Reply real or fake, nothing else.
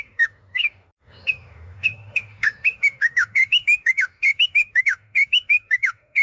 fake